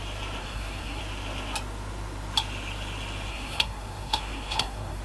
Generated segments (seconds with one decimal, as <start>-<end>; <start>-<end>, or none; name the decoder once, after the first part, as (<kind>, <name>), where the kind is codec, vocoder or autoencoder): 0.4-1.0 (codec, SNAC); 3.3-5.0